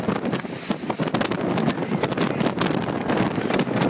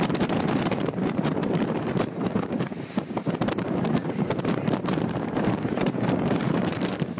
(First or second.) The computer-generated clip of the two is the second